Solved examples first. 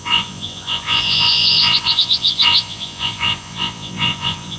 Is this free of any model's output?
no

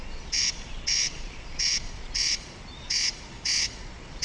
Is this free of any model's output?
no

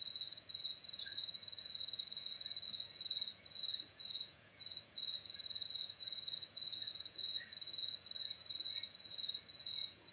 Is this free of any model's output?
no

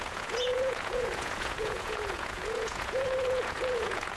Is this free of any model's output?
no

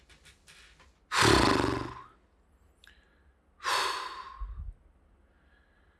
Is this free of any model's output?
yes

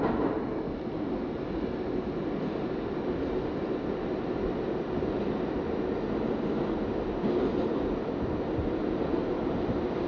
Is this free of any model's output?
yes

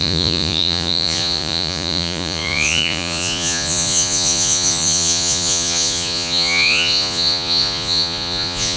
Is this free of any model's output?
no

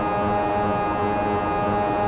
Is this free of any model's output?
yes